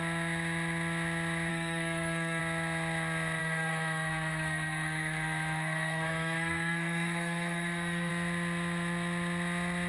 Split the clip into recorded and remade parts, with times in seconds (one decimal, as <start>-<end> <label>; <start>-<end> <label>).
0.0-1.5 recorded; 1.5-2.4 remade; 2.4-3.4 recorded; 3.4-8.1 remade; 8.1-9.9 recorded